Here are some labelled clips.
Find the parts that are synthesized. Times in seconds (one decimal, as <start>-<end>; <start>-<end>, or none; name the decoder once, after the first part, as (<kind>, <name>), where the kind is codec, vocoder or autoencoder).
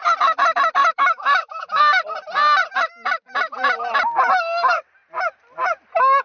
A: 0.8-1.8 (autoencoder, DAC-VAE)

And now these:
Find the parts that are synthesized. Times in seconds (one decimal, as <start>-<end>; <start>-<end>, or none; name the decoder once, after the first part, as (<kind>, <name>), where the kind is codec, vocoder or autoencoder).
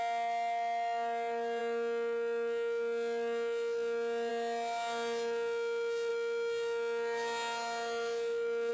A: none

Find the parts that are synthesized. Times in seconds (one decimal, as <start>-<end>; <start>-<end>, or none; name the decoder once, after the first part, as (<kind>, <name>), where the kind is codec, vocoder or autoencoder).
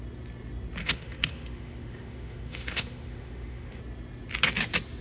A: 0.8-3.8 (autoencoder, DAC-VAE)